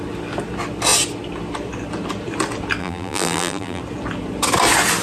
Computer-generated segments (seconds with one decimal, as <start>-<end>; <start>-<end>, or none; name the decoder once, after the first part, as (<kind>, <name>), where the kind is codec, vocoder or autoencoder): 2.8-3.8 (vocoder, BigVGAN v2)